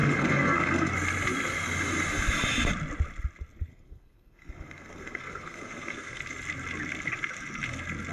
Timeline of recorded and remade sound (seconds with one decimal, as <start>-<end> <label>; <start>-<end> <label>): 0.0-0.9 remade; 0.9-3.7 recorded; 3.7-6.2 remade; 6.2-8.1 recorded